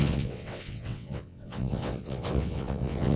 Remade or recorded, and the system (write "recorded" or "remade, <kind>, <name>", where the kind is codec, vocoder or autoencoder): remade, vocoder, WaveNeXt